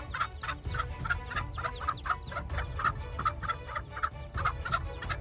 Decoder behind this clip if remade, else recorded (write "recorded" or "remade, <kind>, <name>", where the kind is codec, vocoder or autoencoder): recorded